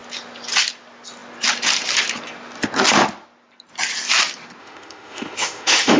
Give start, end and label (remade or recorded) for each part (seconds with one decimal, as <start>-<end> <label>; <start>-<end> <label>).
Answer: 0.0-4.6 recorded; 4.6-6.0 remade